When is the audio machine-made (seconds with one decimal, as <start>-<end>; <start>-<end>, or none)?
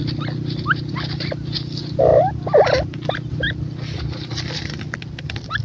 none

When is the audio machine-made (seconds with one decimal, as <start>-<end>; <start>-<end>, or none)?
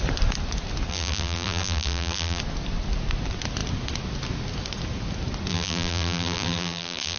0.9-2.4; 5.5-7.2